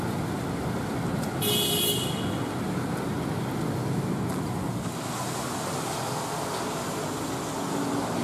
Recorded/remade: recorded